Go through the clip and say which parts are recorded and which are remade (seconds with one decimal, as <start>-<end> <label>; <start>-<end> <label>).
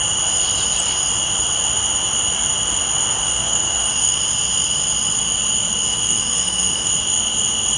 0.0-3.2 recorded; 3.2-4.2 remade; 4.2-5.9 recorded; 5.9-6.9 remade; 6.9-7.8 recorded